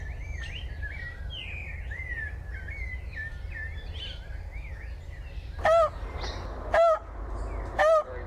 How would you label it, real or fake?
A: real